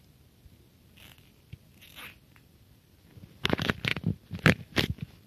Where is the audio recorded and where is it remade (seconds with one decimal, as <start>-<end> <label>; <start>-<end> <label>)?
0.0-3.9 recorded; 3.9-4.6 remade; 4.6-5.3 recorded